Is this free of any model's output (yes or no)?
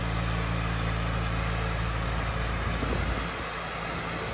yes